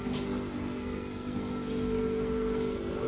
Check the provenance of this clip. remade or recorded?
remade